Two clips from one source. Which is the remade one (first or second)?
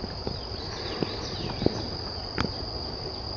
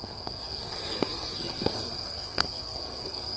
second